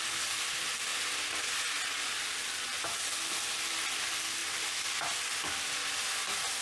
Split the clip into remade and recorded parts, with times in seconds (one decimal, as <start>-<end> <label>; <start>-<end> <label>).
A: 0.0-6.6 recorded